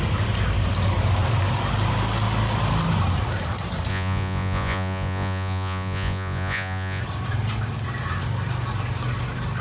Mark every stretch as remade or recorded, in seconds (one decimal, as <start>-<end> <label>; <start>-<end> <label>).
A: 0.0-3.9 recorded; 3.9-7.0 remade; 7.0-9.6 recorded